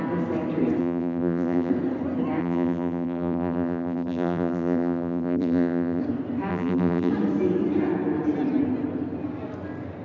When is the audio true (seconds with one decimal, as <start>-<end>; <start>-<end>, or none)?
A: 0.0-0.8; 1.7-2.4; 6.0-6.5; 7.1-10.0